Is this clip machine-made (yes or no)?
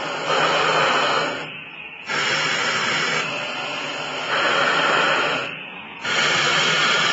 no